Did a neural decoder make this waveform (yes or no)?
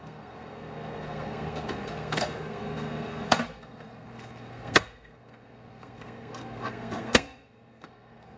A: yes